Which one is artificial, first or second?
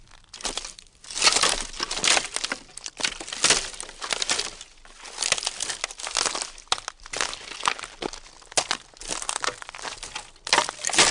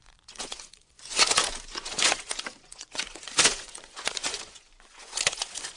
second